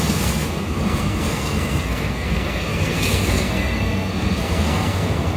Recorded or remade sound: remade